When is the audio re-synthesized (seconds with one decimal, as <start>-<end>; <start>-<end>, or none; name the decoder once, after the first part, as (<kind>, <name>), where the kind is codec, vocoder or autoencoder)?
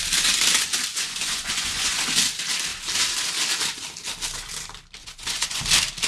0.9-2.0 (vocoder, Vocos); 5.0-5.6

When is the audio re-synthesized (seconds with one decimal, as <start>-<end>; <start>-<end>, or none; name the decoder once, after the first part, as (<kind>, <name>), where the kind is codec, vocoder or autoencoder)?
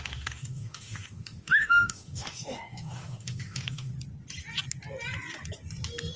0.0-3.9 (autoencoder, DAC-VAE)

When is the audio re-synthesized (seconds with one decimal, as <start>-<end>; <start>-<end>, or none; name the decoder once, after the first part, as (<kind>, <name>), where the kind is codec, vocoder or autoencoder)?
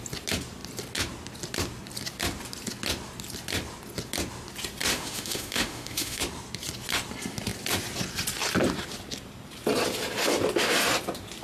4.9-6.2 (autoencoder, DAC-VAE)